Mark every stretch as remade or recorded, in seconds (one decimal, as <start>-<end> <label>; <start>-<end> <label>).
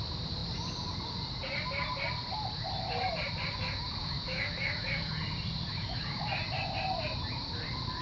0.0-4.0 recorded; 4.0-5.1 remade; 5.1-5.7 recorded; 5.7-6.3 remade; 6.3-8.0 recorded